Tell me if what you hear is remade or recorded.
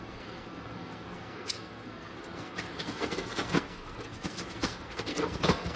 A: remade